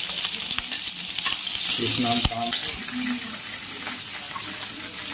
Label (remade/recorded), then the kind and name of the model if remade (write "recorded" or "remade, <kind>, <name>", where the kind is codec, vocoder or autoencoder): recorded